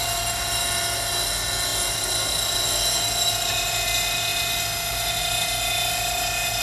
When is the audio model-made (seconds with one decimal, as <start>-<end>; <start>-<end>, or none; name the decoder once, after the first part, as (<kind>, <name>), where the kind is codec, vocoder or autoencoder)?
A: none

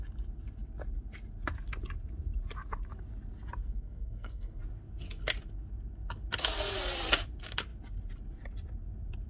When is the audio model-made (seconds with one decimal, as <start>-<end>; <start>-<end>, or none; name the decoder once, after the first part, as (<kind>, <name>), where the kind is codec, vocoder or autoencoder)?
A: 3.6-4.6 (codec, SNAC)

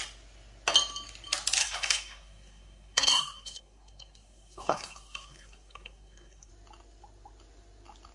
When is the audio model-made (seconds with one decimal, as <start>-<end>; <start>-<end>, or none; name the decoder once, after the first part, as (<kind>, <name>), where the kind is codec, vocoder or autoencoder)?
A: 1.6-6.5 (codec, SNAC)

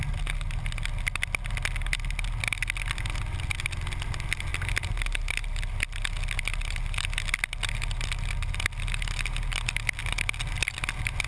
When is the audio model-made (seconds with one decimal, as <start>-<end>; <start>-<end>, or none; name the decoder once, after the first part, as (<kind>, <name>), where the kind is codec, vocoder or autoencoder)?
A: none

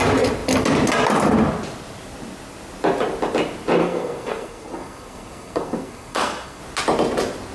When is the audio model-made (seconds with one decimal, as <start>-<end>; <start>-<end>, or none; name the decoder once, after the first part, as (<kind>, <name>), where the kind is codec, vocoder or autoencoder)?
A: 3.8-6.6 (codec, SNAC)

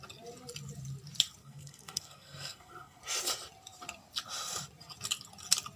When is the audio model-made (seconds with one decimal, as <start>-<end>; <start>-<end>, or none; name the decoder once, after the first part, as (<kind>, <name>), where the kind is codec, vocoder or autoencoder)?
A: 1.4-3.0 (codec, SNAC)

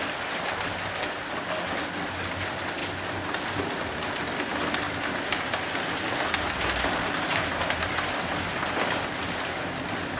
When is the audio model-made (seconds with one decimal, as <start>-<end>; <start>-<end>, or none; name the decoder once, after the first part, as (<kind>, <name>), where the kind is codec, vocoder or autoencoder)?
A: none